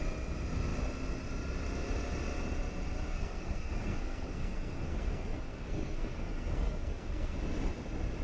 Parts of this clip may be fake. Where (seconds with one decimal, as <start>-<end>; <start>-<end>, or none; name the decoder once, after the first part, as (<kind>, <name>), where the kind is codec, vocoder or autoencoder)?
3.1-7.4 (codec, SNAC)